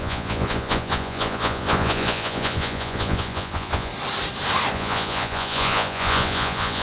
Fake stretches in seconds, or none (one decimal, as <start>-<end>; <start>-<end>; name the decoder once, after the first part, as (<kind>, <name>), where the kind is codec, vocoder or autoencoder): 0.0-3.9 (vocoder, Vocos); 4.7-6.8